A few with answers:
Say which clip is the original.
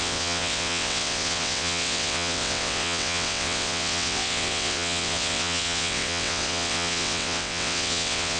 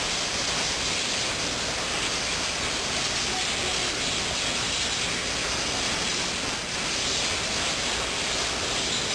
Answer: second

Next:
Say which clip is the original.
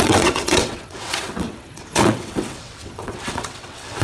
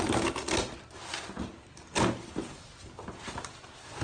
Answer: second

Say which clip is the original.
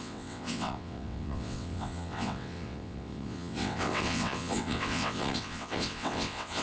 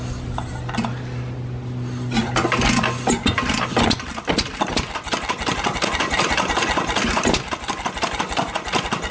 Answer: second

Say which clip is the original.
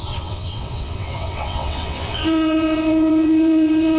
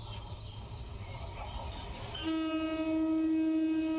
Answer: second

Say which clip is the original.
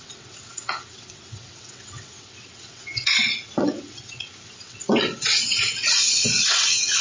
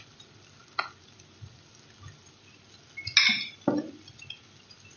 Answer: second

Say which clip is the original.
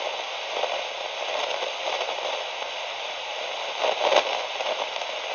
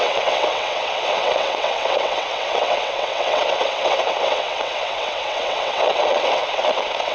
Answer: first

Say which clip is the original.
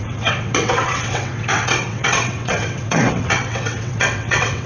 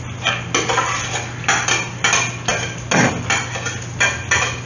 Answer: second